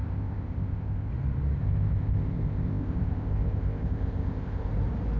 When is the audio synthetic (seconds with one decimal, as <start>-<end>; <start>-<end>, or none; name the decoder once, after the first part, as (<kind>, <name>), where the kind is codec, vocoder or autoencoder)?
0.0-1.1 (codec, ZipCodec); 1.6-4.7

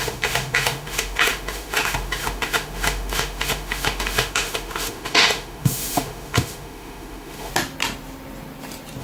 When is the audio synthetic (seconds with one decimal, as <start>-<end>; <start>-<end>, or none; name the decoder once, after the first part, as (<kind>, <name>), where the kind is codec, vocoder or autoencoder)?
0.0-7.5 (autoencoder, DAC-VAE)

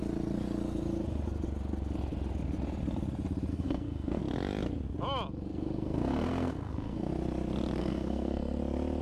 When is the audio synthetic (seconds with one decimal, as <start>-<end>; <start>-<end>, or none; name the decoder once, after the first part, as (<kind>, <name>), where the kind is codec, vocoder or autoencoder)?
3.5-4.2 (codec, SNAC); 5.5-7.1; 7.8-8.6